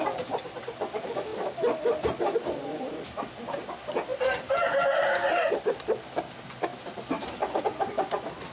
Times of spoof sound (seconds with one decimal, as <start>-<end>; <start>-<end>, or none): 0.0-1.3; 3.3-4.1; 5.6-6.7; 7.6-8.5